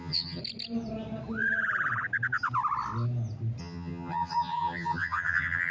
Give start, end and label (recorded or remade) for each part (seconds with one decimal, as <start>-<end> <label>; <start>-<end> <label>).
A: 0.0-0.4 remade; 0.4-3.6 recorded; 3.6-5.7 remade